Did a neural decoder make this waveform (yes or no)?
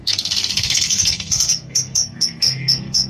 yes